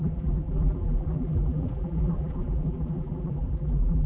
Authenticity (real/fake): fake